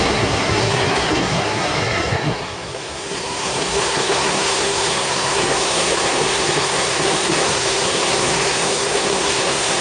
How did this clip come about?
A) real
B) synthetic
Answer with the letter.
B